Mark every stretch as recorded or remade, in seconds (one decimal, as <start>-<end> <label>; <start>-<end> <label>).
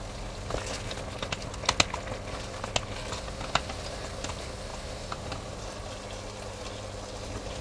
0.0-4.7 recorded; 4.7-5.6 remade; 5.6-7.6 recorded